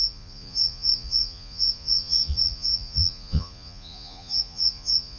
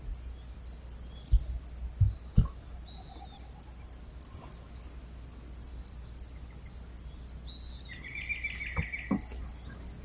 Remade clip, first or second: first